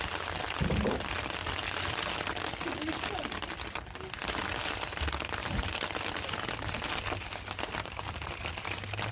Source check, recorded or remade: recorded